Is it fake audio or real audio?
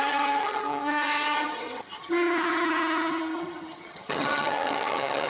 fake